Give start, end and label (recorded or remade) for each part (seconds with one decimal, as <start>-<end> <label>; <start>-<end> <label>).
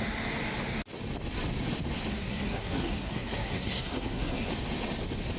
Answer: 0.0-2.1 recorded; 2.1-4.5 remade; 4.5-5.4 recorded